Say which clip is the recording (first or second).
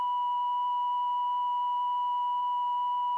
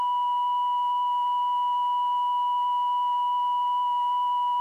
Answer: first